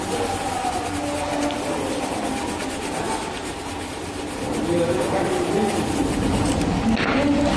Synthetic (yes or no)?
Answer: no